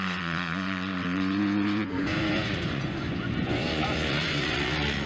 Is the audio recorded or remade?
remade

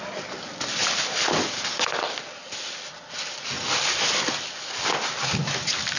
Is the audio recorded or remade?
recorded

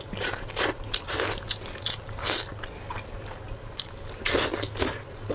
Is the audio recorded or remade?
recorded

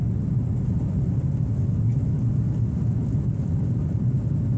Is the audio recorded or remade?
recorded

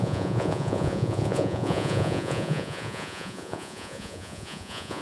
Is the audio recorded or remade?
remade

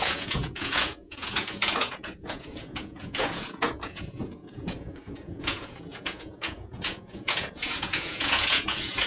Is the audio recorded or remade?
remade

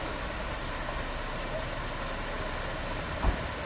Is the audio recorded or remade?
recorded